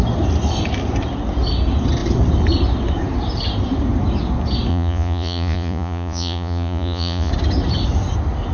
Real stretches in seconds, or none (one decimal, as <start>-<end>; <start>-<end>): 0.0-4.7; 7.3-8.5

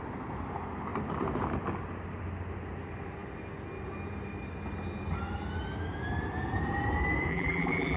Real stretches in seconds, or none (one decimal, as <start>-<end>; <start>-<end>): 0.0-7.3

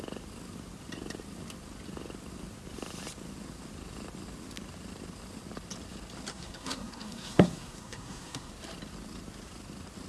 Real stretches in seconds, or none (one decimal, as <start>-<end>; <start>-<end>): 0.0-6.3; 8.5-10.1

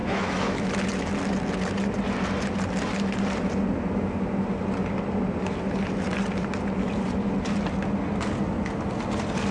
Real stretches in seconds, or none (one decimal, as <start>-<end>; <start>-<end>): 0.7-9.5

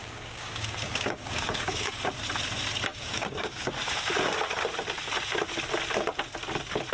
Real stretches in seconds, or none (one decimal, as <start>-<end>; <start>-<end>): 2.0-2.9; 3.7-6.9

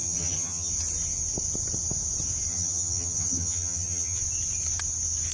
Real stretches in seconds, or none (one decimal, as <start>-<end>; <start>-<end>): 0.7-2.5; 4.2-5.3

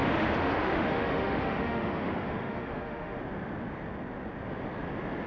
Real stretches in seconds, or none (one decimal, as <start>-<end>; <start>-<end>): 3.2-5.3